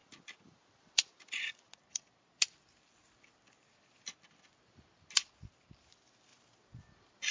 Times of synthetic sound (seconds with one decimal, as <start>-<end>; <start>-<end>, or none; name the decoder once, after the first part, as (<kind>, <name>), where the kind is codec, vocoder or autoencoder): none